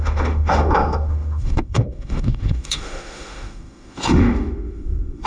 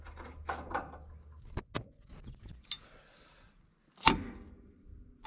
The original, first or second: second